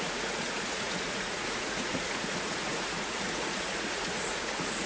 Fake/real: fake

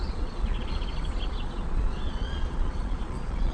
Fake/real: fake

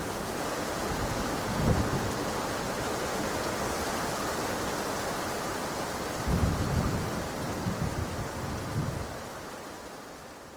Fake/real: real